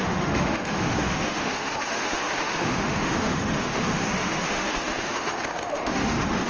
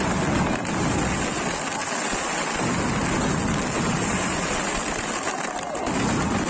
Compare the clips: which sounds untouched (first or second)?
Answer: second